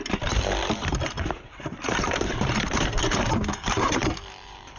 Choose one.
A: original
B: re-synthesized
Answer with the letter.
B